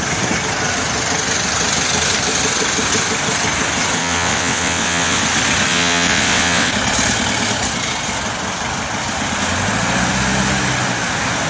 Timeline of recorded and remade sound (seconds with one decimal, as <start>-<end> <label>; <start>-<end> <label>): 0.0-4.0 recorded; 4.0-5.2 remade; 5.2-5.7 recorded; 5.7-6.7 remade; 6.7-11.5 recorded